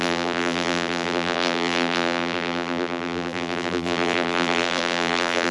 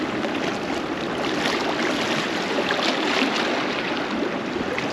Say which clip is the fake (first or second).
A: first